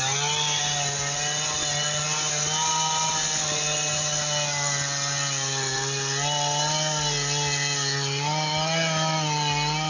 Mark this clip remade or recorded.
recorded